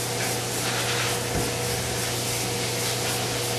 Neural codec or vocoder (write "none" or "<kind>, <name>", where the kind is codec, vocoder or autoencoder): none